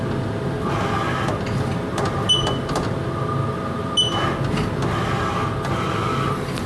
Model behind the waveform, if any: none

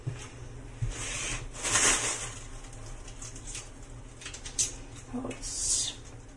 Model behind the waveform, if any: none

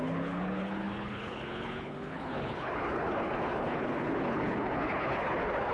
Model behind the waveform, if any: codec, HILCodec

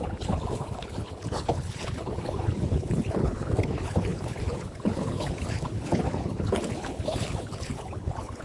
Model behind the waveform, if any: codec, HILCodec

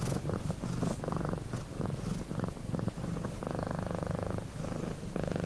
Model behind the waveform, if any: none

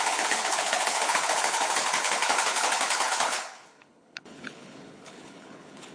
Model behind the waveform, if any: codec, HILCodec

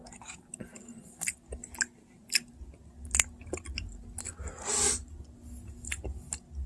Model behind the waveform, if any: none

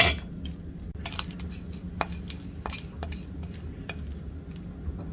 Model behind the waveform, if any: none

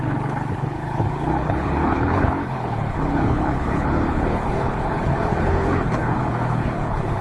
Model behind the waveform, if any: codec, HILCodec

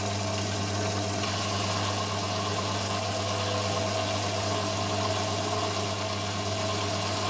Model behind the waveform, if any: none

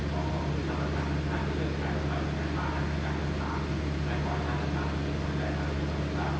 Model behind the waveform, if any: none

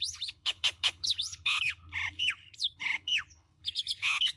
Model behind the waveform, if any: codec, HILCodec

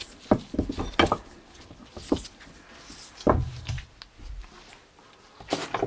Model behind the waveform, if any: none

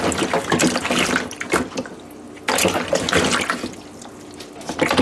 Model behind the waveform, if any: none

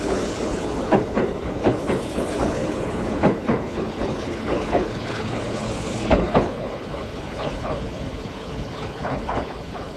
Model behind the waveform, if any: codec, HILCodec